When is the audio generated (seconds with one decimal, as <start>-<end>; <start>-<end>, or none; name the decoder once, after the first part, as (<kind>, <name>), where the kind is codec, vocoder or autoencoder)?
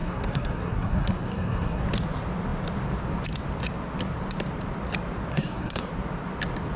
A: 0.0-1.8 (codec, SNAC); 5.3-5.9